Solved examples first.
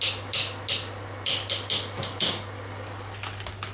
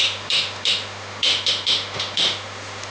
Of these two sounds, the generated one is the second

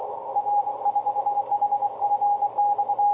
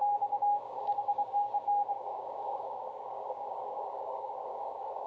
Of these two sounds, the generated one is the second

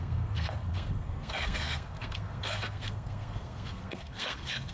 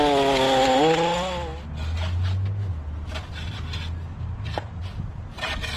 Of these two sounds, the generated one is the first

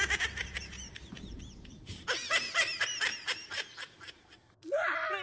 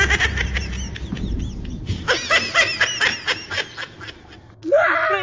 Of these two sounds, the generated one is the first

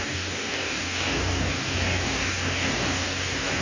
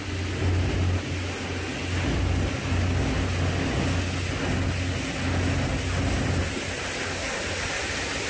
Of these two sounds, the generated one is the first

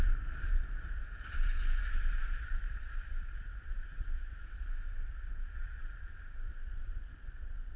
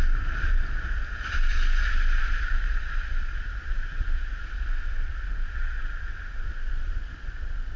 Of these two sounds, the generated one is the first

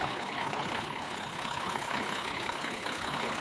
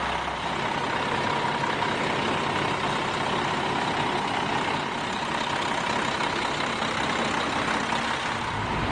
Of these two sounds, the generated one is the first